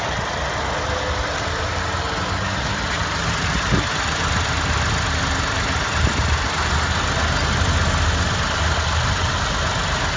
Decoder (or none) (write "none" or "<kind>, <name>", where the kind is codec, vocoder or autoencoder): none